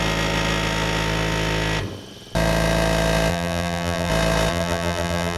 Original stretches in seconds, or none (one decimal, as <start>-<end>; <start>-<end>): 0.0-3.3; 4.1-4.5